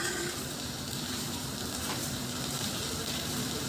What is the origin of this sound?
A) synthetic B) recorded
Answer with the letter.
A